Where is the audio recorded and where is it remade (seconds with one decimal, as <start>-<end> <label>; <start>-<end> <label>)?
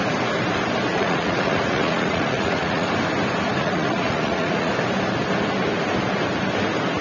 0.0-0.9 recorded; 0.9-2.9 remade; 2.9-3.6 recorded; 3.6-4.7 remade; 4.7-7.0 recorded